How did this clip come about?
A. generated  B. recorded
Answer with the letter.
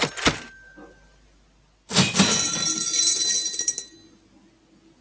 B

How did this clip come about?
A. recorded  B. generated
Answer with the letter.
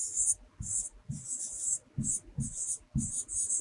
A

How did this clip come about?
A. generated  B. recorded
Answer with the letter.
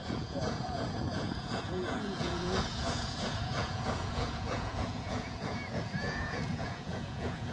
A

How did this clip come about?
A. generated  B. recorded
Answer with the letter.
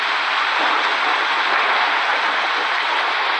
B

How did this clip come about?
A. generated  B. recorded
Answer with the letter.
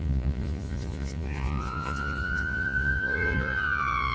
A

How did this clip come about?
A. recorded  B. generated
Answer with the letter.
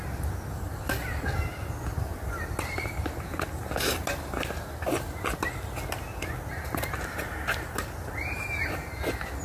A